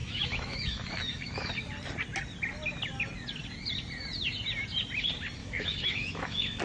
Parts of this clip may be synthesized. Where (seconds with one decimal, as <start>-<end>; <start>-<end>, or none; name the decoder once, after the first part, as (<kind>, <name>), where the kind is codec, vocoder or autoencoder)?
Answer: 0.0-1.5 (autoencoder, DAC-VAE); 5.4-6.6